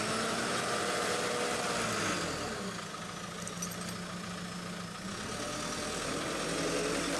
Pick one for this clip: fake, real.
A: real